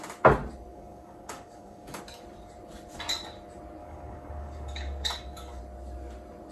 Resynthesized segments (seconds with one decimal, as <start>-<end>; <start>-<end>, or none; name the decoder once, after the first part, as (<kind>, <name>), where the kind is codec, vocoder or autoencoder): 0.7-2.0 (codec, DAC); 3.8-5.6